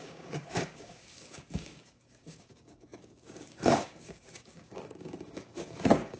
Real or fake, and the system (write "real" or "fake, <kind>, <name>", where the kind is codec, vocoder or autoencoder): fake, codec, DAC